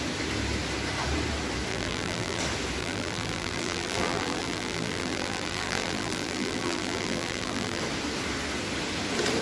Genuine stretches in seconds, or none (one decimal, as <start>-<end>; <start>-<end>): 0.0-1.7; 2.4-2.8; 7.8-9.4